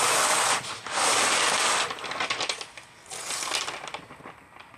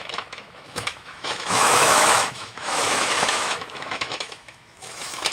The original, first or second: first